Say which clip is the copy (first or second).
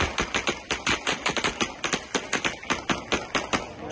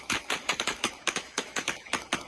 second